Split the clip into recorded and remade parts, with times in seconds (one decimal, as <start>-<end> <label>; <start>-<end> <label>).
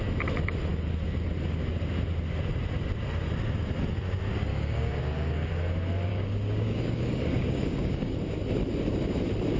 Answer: 0.0-4.5 recorded; 4.5-5.5 remade; 5.5-6.1 recorded; 6.1-8.1 remade; 8.1-9.6 recorded